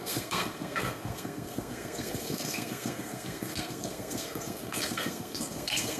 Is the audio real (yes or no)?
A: no